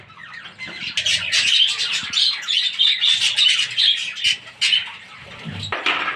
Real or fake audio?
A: real